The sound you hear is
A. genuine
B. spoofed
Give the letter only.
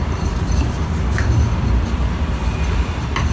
B